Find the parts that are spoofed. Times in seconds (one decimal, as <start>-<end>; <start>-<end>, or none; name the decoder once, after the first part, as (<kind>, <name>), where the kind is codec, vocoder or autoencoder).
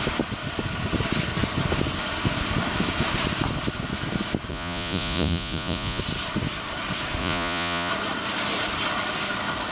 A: 4.5-6.0 (vocoder, Vocos); 7.2-7.9